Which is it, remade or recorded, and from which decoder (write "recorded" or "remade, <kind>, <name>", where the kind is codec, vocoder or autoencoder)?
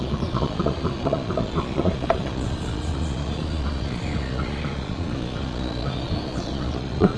remade, vocoder, Vocos